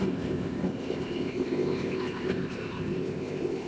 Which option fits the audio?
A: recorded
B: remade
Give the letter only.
B